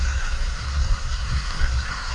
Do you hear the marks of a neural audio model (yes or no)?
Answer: yes